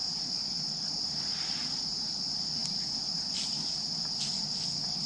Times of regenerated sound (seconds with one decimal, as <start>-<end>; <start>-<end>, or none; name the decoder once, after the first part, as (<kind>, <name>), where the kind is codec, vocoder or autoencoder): none

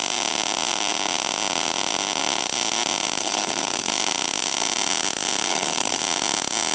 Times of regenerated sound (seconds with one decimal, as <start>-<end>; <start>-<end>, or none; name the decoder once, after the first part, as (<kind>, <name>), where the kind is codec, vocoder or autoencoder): 3.2-3.9 (codec, SNAC); 5.5-6.0

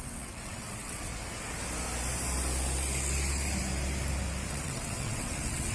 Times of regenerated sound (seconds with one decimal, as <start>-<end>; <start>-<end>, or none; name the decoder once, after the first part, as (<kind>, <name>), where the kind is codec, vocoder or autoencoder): 0.0-1.1 (vocoder, WaveNeXt); 4.5-5.7

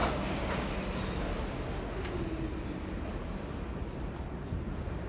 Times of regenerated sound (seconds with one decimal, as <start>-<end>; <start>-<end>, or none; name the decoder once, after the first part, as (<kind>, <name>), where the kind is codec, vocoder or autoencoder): none

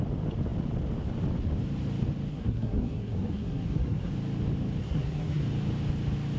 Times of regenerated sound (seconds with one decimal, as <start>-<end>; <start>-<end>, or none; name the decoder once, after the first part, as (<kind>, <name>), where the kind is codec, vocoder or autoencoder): 2.3-4.1 (codec, SNAC); 4.8-5.4

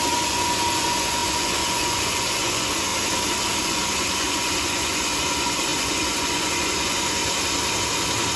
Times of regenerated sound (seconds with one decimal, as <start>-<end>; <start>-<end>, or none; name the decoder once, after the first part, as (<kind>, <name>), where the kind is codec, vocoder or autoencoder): 0.0-2.9 (vocoder, Vocos); 3.6-7.2